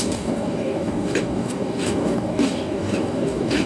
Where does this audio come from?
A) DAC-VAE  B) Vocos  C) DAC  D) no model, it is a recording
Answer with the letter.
C